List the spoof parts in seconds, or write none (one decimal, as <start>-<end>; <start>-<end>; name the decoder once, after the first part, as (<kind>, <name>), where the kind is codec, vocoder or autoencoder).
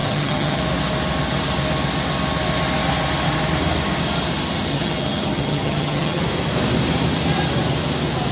0.0-0.6 (vocoder, HiFi-GAN); 4.7-6.2